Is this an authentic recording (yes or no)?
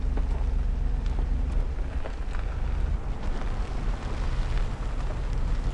yes